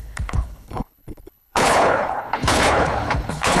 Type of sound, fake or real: fake